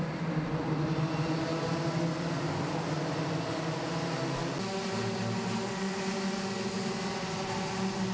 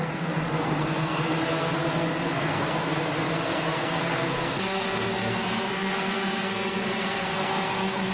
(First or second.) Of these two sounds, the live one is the first